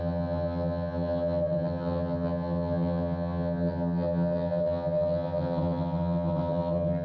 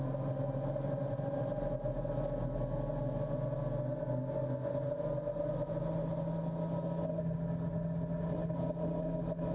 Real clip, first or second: second